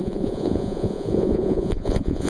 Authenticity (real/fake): fake